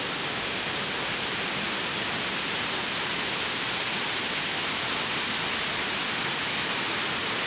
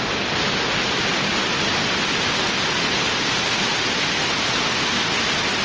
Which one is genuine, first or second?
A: second